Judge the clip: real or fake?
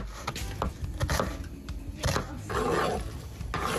real